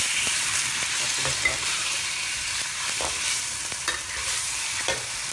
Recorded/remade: remade